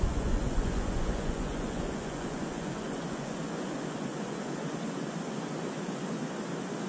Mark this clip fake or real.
fake